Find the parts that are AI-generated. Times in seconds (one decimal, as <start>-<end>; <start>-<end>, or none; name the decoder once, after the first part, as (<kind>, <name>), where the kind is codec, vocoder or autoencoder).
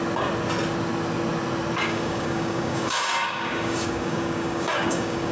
1.8-5.3 (codec, DAC)